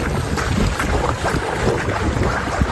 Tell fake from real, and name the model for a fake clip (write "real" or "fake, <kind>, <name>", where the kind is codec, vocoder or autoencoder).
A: real